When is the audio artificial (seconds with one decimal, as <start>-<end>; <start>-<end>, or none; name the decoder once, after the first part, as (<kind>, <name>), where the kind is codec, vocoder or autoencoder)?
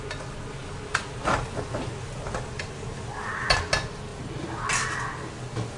none